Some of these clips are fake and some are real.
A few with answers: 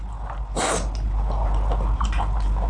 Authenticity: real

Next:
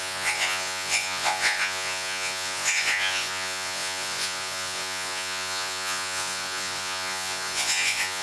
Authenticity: fake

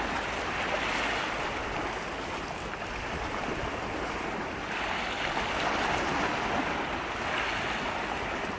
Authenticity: real